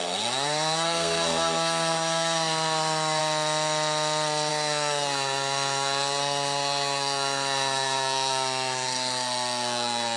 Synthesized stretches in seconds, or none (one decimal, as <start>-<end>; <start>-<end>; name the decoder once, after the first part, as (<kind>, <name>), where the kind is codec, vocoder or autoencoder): 0.0-3.2 (codec, SNAC); 4.5-10.2